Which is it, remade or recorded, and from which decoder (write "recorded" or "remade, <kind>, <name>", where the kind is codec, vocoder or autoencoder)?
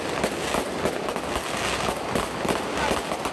recorded